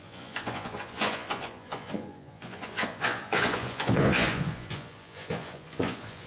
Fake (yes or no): yes